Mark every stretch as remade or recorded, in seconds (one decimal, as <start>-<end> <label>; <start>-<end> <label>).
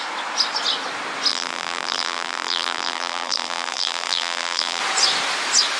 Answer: 0.0-1.3 recorded; 1.3-4.8 remade; 4.8-5.8 recorded